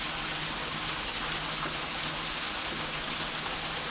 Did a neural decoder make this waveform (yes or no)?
no